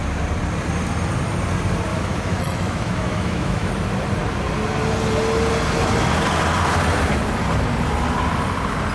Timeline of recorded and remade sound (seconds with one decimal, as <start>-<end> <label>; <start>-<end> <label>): 0.0-1.9 recorded; 1.9-3.7 remade; 3.7-8.9 recorded